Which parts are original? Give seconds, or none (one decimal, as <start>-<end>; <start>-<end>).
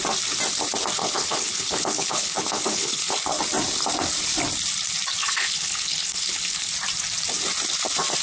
0.0-1.0; 3.4-5.2; 6.7-8.2